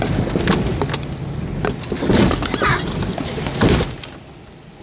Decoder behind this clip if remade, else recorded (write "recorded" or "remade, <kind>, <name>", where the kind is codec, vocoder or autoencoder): recorded